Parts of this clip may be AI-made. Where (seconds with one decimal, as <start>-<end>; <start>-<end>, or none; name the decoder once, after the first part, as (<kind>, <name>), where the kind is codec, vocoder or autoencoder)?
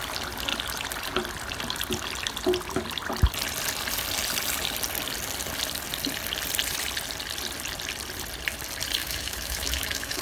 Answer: 9.0-10.2 (autoencoder, DAC-VAE)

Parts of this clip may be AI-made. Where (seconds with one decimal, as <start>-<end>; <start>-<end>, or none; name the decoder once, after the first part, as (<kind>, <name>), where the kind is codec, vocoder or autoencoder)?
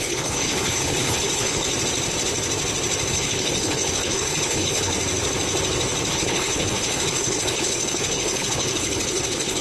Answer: 0.0-1.7 (codec, HILCodec); 3.1-4.9; 6.1-9.6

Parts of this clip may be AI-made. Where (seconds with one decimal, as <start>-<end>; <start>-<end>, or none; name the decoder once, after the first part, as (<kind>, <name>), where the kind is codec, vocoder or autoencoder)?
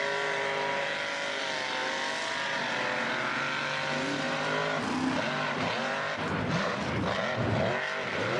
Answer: none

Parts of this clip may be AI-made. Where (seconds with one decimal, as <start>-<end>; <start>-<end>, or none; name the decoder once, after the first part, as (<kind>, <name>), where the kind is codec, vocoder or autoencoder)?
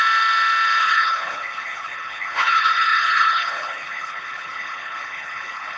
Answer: 0.8-5.8 (codec, HILCodec)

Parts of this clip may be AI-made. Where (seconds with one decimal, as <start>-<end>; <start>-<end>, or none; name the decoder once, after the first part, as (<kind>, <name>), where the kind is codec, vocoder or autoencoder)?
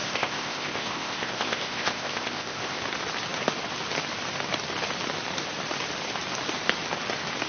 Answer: 0.0-2.8 (codec, ZipCodec)